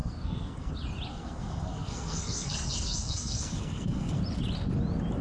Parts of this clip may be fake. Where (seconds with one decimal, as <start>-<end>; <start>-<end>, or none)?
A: 0.0-0.7; 1.1-4.2